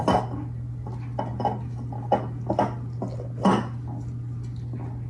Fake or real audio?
real